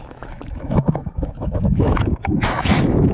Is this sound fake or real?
fake